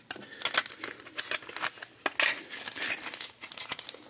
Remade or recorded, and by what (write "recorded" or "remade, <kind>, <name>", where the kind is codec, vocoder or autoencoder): recorded